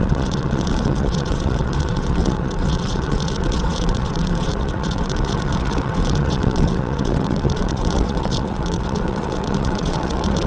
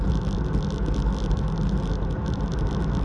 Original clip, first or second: second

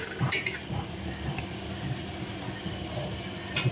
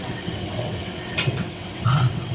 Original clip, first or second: first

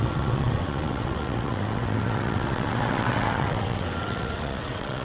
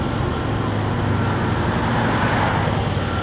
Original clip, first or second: second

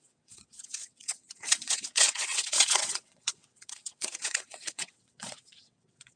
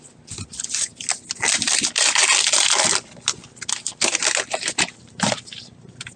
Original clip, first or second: second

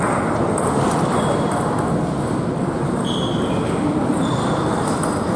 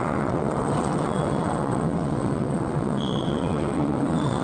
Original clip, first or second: first